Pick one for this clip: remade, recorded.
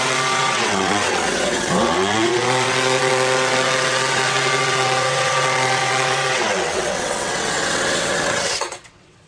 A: remade